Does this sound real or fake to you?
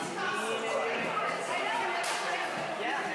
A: real